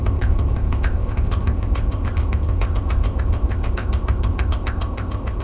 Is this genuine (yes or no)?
no